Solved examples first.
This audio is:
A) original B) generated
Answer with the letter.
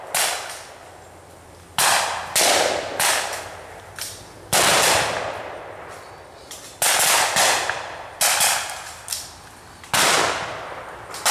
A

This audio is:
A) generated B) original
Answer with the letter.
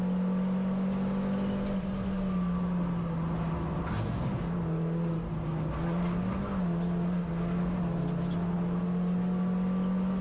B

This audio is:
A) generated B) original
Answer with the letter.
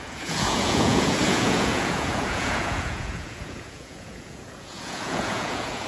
A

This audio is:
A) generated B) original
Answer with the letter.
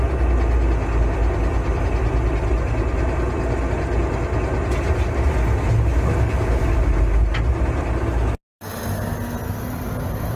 B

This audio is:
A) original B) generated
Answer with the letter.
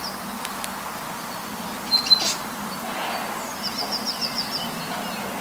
A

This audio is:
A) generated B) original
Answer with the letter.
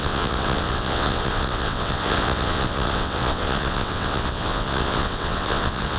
A